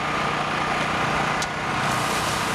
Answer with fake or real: real